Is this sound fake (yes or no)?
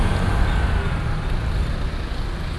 no